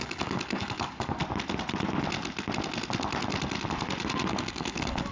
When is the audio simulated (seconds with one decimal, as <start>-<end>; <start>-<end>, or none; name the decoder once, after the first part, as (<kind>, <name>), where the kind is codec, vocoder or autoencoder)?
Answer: 0.0-1.2 (codec, DAC); 4.3-5.1